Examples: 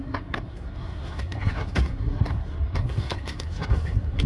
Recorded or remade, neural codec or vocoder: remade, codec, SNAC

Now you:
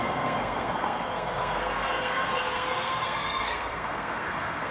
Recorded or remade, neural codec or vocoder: remade, codec, SNAC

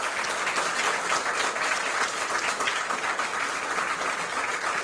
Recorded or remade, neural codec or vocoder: recorded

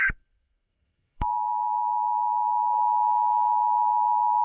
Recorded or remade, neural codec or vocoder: remade, autoencoder, DAC-VAE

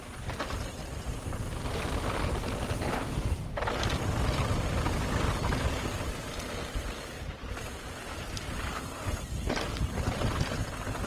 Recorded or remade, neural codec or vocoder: recorded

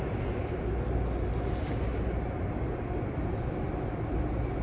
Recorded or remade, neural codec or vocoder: recorded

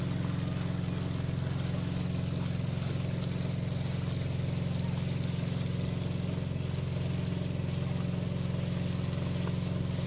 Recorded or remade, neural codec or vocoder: recorded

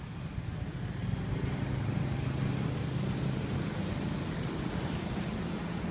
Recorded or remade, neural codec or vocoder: recorded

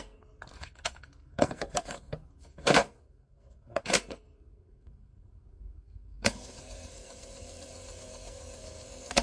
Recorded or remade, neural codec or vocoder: remade, codec, SNAC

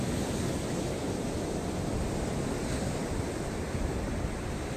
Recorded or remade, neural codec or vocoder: recorded